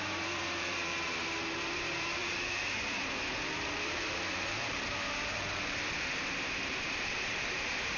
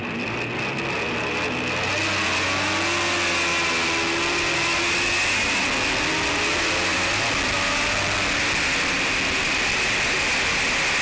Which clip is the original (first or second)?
second